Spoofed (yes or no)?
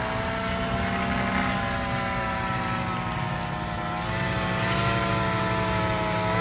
no